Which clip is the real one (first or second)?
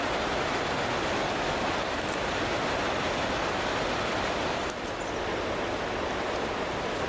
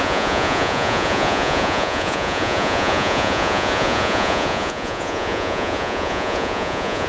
first